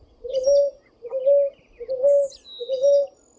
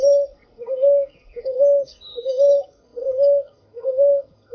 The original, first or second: first